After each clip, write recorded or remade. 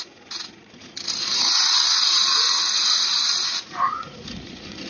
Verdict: remade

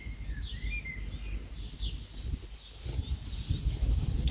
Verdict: recorded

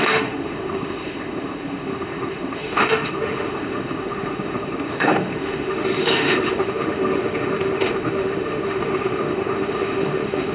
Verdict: remade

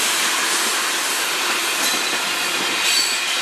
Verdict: recorded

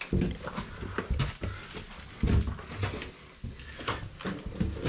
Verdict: recorded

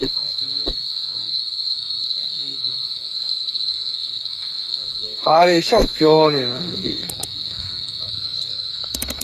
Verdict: remade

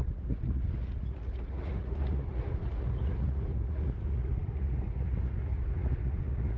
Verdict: remade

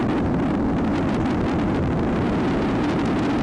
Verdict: remade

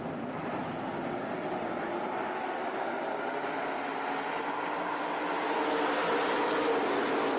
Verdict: recorded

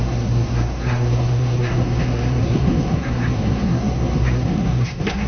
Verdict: remade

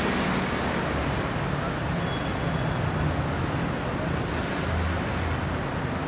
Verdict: recorded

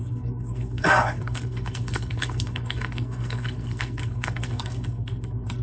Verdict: remade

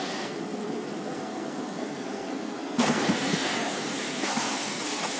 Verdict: remade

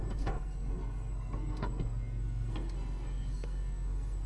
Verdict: remade